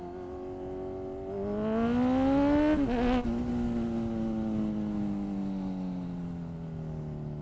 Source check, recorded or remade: recorded